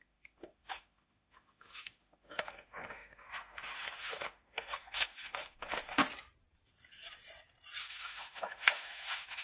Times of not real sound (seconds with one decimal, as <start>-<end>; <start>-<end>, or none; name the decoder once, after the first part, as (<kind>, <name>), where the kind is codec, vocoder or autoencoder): 0.0-6.0 (autoencoder, DAC-VAE); 7.8-9.4

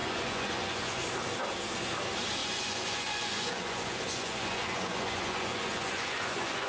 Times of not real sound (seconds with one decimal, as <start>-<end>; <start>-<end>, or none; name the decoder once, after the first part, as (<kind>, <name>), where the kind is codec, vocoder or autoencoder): 0.0-1.0 (vocoder, Vocos); 2.4-6.7

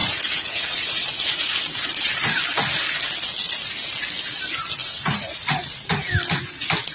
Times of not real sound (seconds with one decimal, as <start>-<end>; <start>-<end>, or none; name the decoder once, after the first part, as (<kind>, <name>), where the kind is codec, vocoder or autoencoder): 0.0-1.6 (vocoder, Vocos); 4.8-5.9

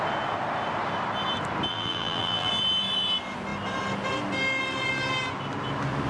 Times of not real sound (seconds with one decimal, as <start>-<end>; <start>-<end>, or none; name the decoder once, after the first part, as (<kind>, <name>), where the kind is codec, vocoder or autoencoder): 1.7-2.5 (vocoder, BigVGAN v2)

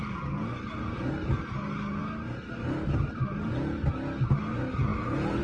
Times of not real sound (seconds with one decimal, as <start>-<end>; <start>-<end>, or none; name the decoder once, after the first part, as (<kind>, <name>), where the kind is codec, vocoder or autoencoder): none